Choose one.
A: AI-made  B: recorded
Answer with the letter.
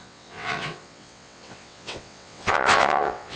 A